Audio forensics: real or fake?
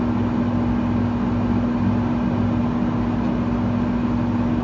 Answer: real